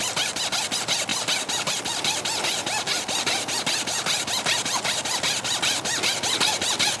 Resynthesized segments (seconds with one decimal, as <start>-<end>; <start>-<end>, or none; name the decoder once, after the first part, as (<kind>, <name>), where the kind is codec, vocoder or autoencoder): none